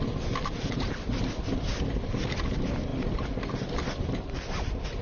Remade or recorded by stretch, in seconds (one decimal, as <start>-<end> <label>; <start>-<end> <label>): 0.0-5.0 recorded